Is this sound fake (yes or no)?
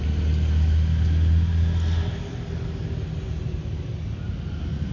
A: no